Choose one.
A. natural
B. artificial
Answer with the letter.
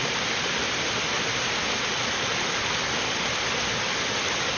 A